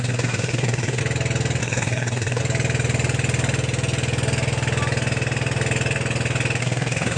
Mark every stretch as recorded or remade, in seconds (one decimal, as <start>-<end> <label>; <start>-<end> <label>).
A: 0.0-1.0 remade; 1.0-1.6 recorded; 1.6-2.4 remade; 2.4-6.6 recorded; 6.6-7.2 remade